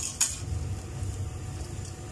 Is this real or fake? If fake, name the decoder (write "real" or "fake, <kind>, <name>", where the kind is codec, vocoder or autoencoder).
real